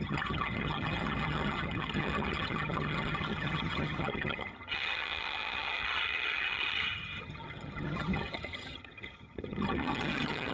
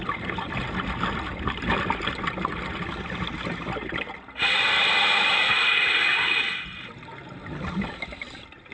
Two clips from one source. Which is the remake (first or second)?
first